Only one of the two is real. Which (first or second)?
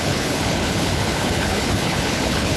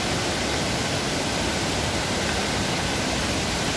second